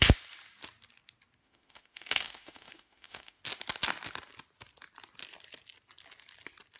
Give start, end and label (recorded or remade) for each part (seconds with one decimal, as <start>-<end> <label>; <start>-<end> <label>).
0.0-1.4 recorded; 1.4-3.4 remade; 3.4-6.8 recorded